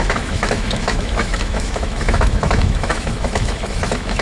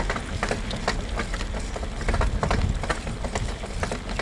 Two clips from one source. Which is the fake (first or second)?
first